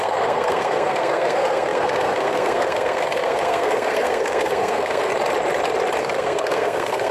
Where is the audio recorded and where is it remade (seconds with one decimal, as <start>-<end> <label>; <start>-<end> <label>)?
0.0-5.1 remade; 5.1-6.0 recorded; 6.0-7.1 remade